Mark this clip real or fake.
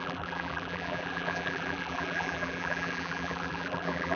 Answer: fake